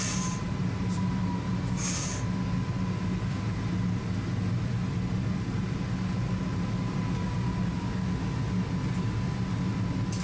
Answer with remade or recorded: recorded